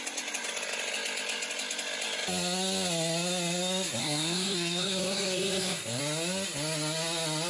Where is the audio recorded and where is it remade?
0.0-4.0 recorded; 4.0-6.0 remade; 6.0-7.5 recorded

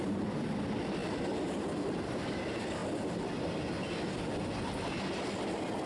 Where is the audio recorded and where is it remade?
0.0-1.0 remade; 1.0-1.5 recorded; 1.5-2.8 remade; 2.8-5.9 recorded

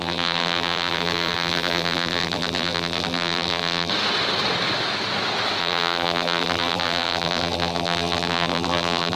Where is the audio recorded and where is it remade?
0.0-3.9 remade; 3.9-5.6 recorded; 5.6-9.2 remade